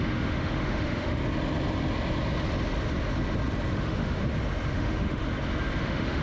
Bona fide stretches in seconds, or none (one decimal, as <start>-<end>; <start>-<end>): 1.2-3.7; 4.2-4.7; 5.2-5.8